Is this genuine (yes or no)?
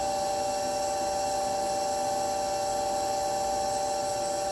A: yes